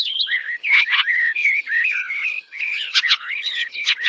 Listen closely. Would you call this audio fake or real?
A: fake